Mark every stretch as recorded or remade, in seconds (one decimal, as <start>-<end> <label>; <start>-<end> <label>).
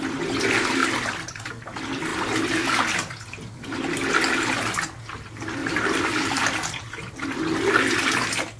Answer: 0.0-0.8 recorded; 0.8-1.5 remade; 1.5-5.6 recorded; 5.6-7.1 remade; 7.1-8.6 recorded